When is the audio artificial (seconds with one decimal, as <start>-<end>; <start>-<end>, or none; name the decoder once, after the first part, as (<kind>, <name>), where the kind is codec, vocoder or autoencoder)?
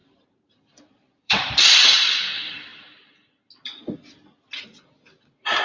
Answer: 0.0-2.2 (vocoder, BigVGAN v2)